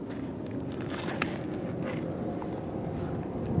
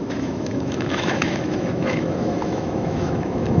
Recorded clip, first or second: first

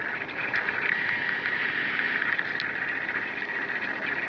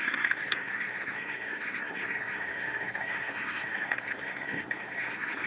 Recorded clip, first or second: first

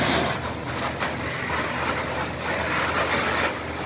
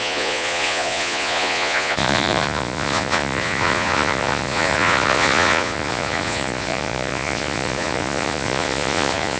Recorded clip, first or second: first